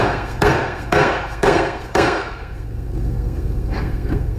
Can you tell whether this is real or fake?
fake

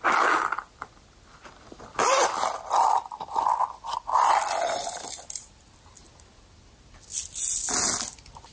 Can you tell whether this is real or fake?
real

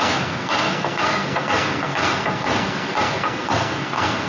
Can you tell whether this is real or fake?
fake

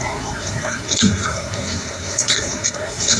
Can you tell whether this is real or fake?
fake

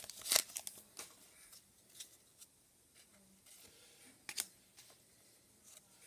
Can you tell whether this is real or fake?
real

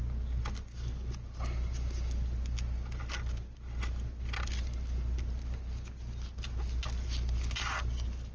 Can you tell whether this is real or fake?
real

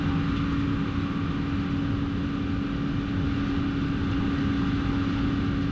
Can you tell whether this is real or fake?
real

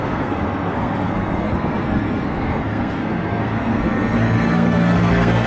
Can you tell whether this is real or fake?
fake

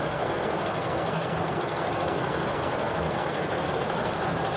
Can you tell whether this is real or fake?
fake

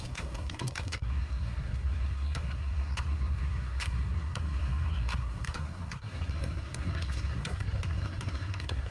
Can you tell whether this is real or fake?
fake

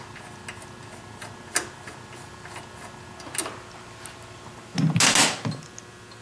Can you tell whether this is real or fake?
real